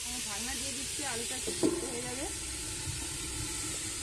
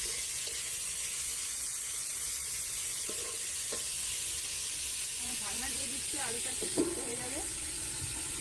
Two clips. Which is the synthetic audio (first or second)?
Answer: second